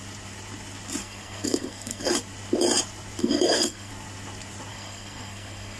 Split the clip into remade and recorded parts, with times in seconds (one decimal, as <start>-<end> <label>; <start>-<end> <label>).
0.0-1.0 recorded; 1.0-2.1 remade; 2.1-3.2 recorded; 3.2-3.9 remade; 3.9-4.7 recorded; 4.7-5.8 remade